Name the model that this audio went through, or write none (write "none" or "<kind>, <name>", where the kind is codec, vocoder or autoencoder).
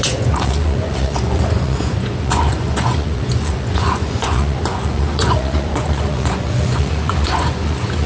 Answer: vocoder, Vocos